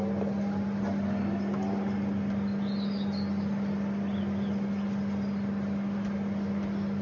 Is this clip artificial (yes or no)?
no